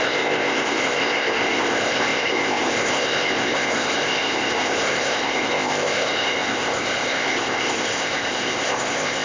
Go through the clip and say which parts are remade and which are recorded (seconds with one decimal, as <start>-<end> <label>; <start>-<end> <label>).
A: 0.0-9.2 remade